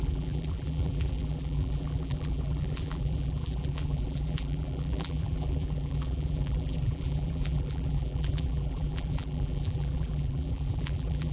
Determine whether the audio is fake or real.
fake